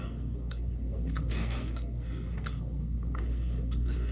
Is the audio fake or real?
fake